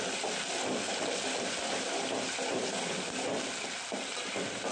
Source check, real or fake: real